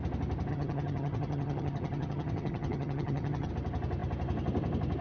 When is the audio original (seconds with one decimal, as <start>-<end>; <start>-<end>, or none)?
0.0-0.5; 3.5-5.0